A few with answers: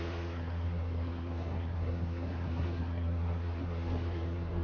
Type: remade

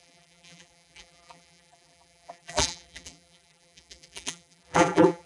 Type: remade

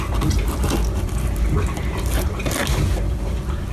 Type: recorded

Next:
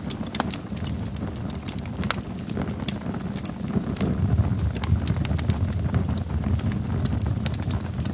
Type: recorded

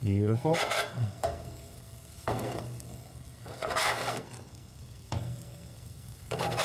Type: remade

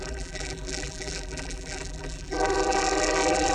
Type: remade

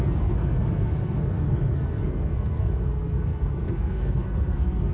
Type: remade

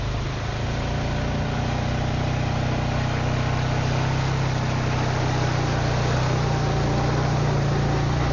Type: recorded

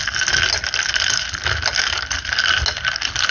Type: recorded